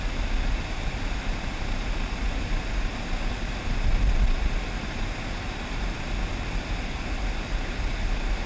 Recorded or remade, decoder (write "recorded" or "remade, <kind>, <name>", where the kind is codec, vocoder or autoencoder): recorded